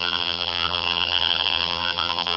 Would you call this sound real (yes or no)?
no